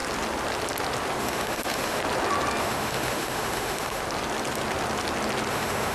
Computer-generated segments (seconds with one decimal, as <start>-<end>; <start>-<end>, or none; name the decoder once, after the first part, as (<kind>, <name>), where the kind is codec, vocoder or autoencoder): 1.2-2.0 (autoencoder, DAC-VAE); 2.6-4.0; 5.5-5.9